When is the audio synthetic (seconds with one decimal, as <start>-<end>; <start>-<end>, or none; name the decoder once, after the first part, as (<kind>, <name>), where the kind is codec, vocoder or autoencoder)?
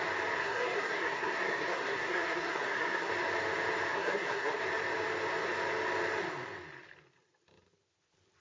0.4-3.1 (codec, SNAC); 3.9-4.6